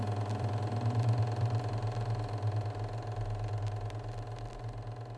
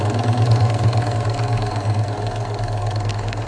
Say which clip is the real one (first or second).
first